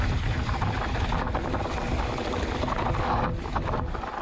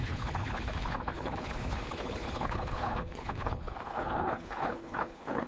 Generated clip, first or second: second